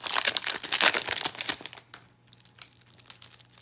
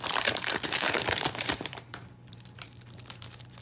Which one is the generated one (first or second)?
second